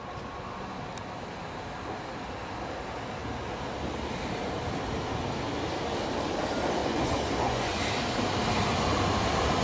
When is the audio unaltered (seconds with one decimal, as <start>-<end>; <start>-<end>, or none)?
0.0-6.8; 7.8-9.6